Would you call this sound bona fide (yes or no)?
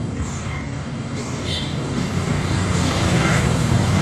no